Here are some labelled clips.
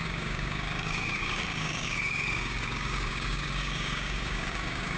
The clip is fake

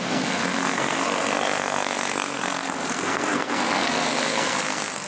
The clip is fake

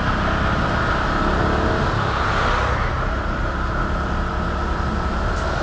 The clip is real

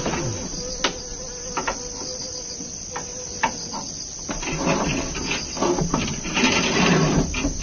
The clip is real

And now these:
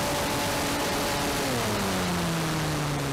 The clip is real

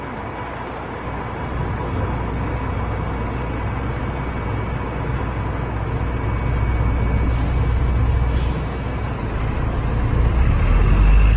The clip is real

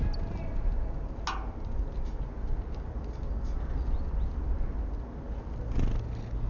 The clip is real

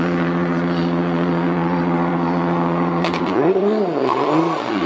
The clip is fake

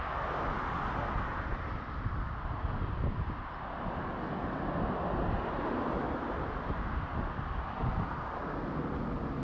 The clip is real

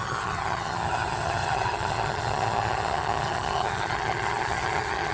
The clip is fake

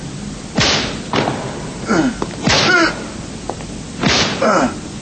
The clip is real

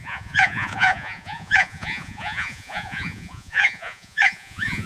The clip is fake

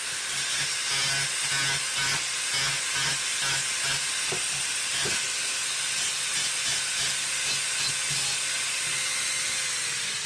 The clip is real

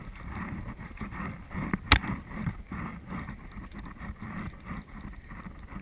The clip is real